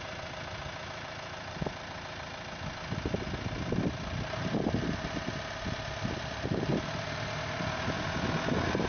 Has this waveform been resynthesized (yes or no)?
no